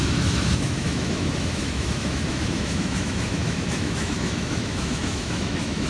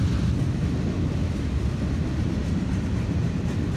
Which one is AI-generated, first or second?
first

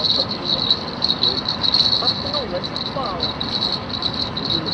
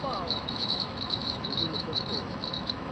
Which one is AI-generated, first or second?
second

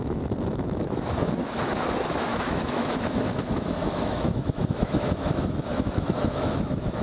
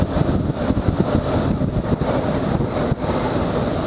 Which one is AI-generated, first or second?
first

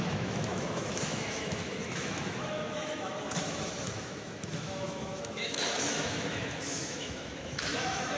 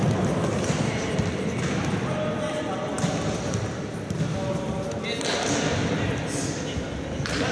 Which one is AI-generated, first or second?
first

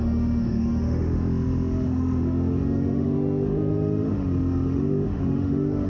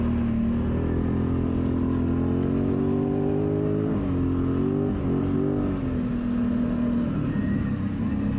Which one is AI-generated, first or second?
first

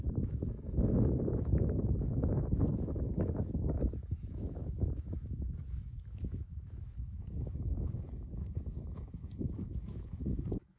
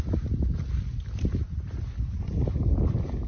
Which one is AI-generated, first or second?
first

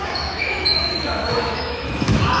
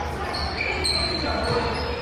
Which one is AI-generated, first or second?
first